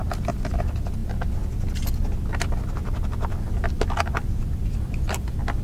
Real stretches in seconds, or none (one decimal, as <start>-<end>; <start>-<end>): 0.0-5.6

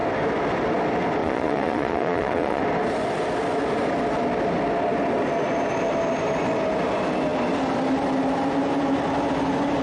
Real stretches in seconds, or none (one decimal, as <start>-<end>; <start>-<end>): 0.0-1.2; 2.6-9.8

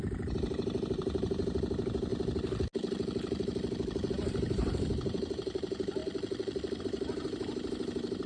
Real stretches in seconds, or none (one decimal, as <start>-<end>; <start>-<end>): 2.1-4.1; 6.0-6.8

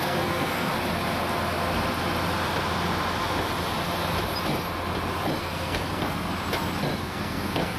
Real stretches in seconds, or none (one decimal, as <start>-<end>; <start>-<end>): 0.7-5.4; 6.3-7.0

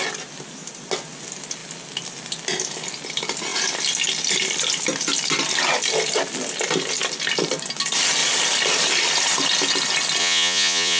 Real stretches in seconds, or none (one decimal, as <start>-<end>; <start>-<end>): 0.0-10.2

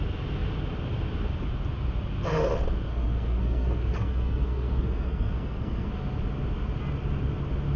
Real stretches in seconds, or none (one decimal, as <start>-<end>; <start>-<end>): 0.0-2.9; 5.9-7.8

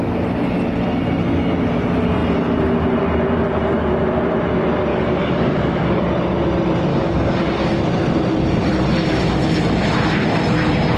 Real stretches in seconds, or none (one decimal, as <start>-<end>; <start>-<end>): 0.0-4.9; 6.0-6.9; 7.8-11.0